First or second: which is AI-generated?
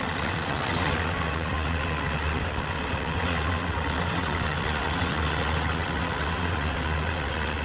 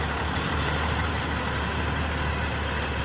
first